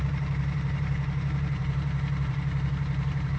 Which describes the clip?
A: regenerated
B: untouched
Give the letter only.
A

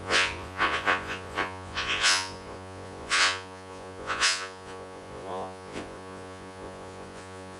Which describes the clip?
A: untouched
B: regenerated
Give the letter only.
B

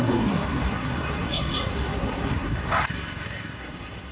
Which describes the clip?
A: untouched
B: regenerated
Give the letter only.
B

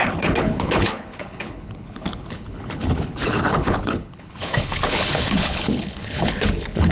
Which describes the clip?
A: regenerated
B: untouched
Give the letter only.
A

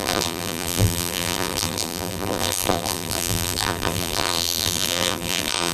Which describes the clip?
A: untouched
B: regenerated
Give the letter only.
B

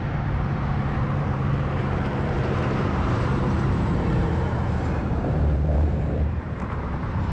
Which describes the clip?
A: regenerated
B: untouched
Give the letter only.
A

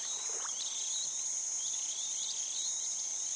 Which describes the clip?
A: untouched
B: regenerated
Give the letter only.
A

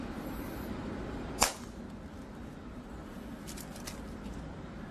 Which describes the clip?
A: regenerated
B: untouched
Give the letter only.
B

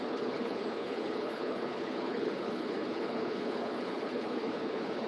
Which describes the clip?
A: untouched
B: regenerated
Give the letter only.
B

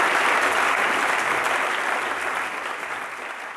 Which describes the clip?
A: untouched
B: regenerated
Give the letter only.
A